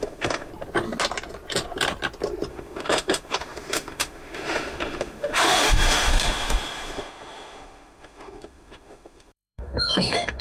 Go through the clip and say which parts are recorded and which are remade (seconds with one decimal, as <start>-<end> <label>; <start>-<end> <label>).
0.0-0.5 remade; 0.5-2.5 recorded; 2.5-10.4 remade